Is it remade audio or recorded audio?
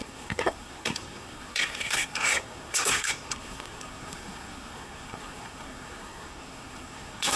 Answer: remade